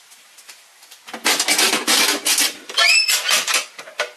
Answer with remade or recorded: recorded